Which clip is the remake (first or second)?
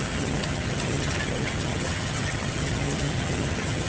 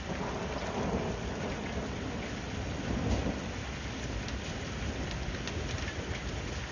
first